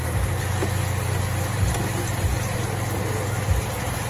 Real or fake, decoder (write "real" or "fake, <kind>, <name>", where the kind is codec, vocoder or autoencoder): real